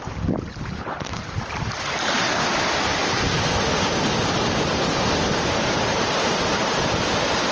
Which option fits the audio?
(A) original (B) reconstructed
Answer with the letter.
A